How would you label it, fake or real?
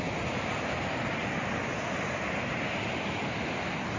real